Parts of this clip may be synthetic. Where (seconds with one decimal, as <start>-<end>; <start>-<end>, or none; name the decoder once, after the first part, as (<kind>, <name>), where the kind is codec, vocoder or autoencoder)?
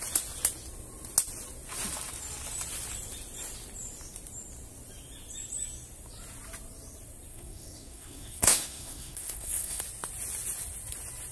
7.3-9.8 (codec, SNAC)